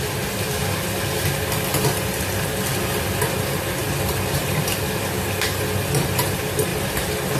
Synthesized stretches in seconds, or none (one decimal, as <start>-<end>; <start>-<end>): none